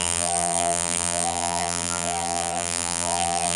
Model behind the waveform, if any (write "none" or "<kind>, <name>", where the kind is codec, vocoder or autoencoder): vocoder, BigVGAN v2